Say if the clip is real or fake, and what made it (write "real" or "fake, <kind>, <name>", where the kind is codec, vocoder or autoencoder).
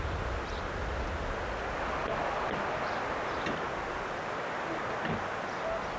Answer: real